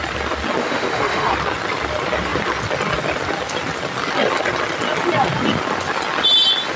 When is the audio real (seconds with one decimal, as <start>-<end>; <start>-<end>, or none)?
0.0-0.6; 1.3-6.8